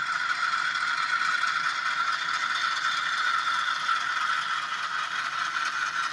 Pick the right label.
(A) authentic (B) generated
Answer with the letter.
A